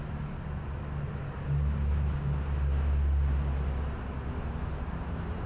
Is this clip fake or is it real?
real